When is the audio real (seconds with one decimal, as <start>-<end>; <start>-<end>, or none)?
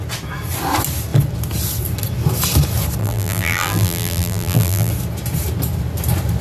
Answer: 0.0-3.0; 4.9-6.4